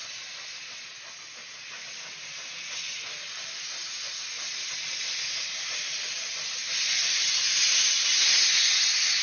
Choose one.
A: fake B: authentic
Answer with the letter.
B